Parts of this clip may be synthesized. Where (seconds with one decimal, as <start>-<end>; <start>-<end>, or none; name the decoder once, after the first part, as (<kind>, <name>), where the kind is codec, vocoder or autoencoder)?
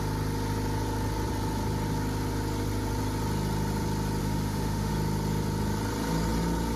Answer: 4.2-4.9 (autoencoder, DAC-VAE)